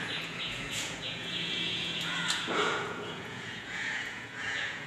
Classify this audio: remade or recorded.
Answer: remade